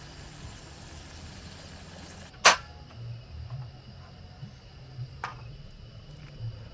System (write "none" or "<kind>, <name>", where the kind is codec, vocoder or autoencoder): none